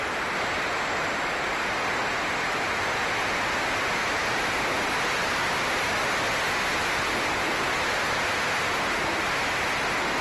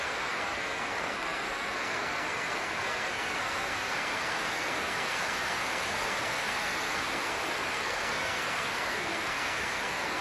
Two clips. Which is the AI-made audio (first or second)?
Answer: second